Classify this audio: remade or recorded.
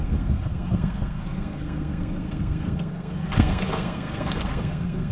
remade